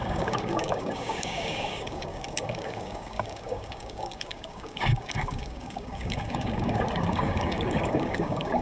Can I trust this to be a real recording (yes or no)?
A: no